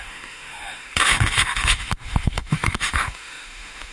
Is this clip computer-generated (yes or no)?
yes